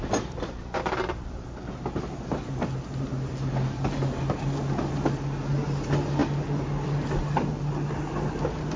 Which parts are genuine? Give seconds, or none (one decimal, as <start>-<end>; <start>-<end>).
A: 0.0-8.8